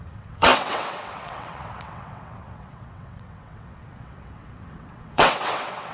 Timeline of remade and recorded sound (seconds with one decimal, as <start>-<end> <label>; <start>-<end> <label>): 0.0-5.9 remade